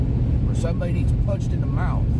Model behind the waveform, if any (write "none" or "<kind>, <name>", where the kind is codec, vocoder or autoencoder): none